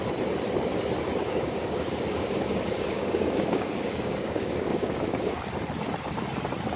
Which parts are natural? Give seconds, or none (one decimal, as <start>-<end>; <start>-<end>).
0.0-1.2; 5.3-6.8